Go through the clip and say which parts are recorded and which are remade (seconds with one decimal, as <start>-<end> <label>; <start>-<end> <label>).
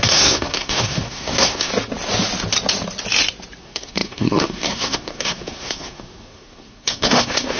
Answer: 0.0-1.7 remade; 1.7-3.6 recorded; 3.6-7.6 remade